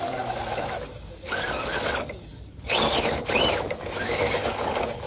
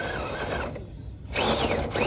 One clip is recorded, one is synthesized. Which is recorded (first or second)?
second